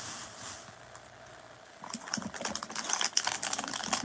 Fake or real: real